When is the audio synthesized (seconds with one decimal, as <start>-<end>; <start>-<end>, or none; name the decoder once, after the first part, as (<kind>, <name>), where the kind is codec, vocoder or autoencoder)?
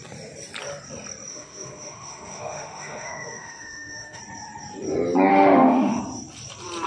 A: 1.3-4.2 (autoencoder, DAC-VAE); 5.3-6.0